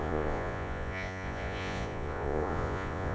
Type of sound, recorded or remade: remade